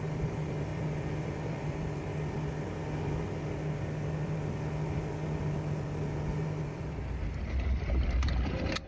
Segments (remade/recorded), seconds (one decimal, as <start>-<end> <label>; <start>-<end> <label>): 0.0-0.7 remade; 0.7-1.2 recorded; 1.2-2.1 remade; 2.1-6.3 recorded; 6.3-8.9 remade